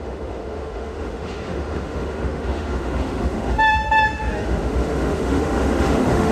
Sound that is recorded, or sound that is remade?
remade